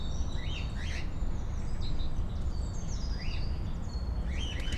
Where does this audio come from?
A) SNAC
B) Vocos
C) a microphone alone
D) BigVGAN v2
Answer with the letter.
C